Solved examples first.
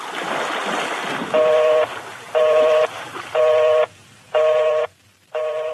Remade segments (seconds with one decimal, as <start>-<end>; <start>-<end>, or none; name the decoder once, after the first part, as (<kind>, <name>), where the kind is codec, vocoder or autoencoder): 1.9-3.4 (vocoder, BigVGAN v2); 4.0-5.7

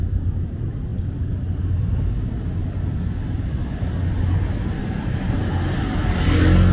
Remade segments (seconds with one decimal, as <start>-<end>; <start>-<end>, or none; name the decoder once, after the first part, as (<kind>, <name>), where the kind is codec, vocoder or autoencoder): 4.8-6.0 (vocoder, BigVGAN v2)

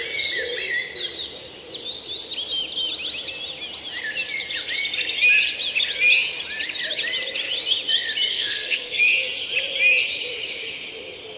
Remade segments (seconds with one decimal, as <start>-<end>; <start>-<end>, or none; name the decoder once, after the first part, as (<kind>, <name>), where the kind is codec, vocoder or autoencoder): 8.3-9.0 (codec, SNAC)

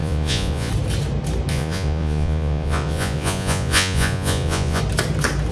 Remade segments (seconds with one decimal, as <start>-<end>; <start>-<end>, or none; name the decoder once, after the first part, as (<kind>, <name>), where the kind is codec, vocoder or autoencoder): 0.0-0.7 (vocoder, Vocos); 1.5-4.8

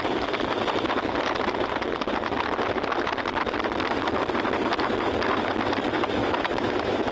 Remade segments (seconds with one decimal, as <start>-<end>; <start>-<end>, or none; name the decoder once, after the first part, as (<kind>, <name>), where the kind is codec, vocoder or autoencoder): 6.2-7.1 (autoencoder, DAC-VAE)